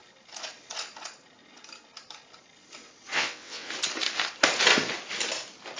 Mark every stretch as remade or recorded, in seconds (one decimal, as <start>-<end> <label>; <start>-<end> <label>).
0.0-3.1 recorded; 3.1-3.7 remade; 3.7-5.8 recorded